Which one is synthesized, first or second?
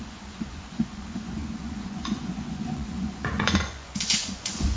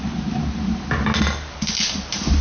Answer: first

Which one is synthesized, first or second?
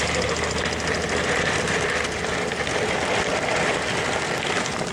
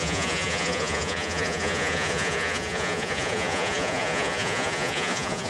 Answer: second